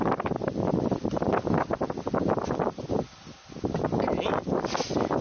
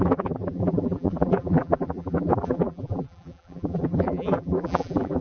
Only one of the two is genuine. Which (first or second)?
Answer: first